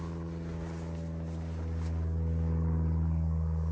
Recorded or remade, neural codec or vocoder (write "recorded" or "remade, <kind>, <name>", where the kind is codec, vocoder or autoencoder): recorded